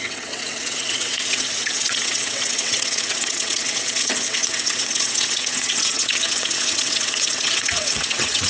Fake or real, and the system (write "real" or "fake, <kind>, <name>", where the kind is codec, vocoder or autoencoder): fake, vocoder, WaveNeXt